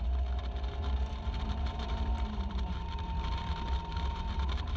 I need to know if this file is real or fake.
fake